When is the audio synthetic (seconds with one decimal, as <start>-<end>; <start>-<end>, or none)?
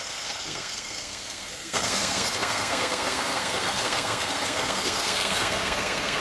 0.0-6.2